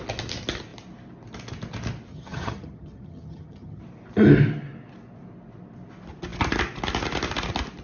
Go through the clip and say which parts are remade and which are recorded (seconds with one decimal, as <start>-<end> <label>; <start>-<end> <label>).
0.0-2.1 recorded; 2.1-3.8 remade; 3.8-7.8 recorded